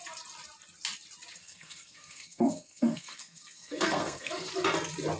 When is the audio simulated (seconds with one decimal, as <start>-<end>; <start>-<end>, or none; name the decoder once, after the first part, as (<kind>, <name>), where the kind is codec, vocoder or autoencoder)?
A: 1.4-4.5 (codec, SNAC)